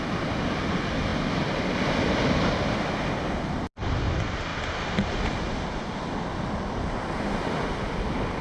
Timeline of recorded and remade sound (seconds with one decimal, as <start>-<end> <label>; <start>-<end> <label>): 0.0-8.4 recorded